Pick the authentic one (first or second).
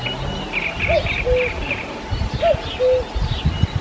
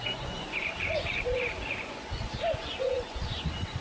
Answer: first